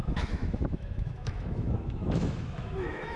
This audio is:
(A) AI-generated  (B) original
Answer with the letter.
A